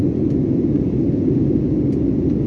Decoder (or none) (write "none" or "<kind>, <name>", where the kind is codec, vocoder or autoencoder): none